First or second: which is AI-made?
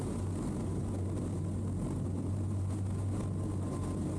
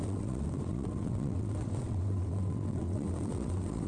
second